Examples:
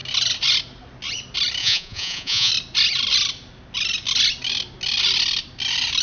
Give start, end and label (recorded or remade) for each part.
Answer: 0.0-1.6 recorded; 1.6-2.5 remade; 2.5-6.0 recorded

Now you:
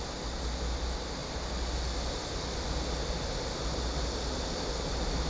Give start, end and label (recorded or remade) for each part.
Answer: 0.0-5.3 recorded

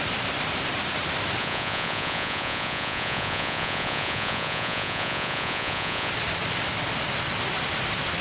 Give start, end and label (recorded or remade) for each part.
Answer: 0.0-1.4 recorded; 1.4-6.1 remade; 6.1-8.2 recorded

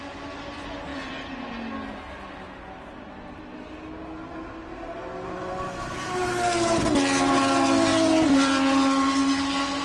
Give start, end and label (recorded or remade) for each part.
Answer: 0.0-9.8 recorded

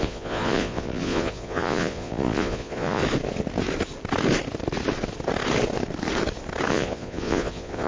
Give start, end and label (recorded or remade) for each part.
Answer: 0.0-3.0 remade; 3.0-6.7 recorded; 6.7-7.9 remade

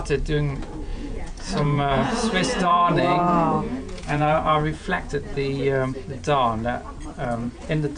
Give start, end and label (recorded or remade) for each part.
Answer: 0.0-0.9 recorded; 0.9-5.1 remade; 5.1-8.0 recorded

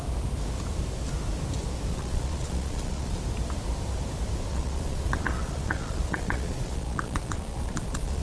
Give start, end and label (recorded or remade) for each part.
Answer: 0.0-1.9 recorded; 1.9-3.2 remade; 3.2-4.5 recorded; 4.5-8.2 remade

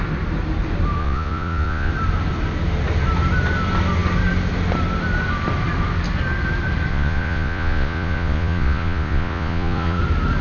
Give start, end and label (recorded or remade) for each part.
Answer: 0.0-1.0 recorded; 1.0-1.9 remade; 1.9-6.9 recorded; 6.9-10.0 remade; 10.0-10.4 recorded